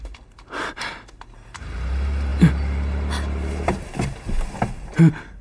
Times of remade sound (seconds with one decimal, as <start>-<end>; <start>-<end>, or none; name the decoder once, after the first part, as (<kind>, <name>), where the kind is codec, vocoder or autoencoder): none